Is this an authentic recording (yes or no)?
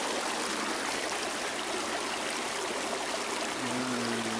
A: yes